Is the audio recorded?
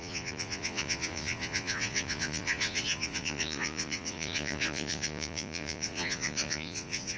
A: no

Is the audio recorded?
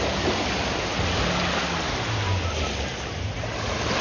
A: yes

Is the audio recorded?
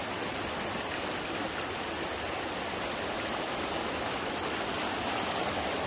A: yes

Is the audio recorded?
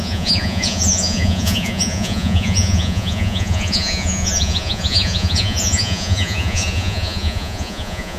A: no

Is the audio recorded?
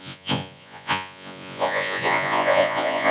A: no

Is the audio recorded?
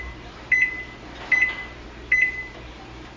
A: yes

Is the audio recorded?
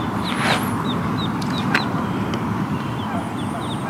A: yes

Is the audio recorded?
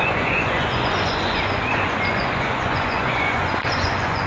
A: no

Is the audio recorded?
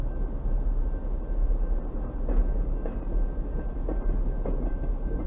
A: yes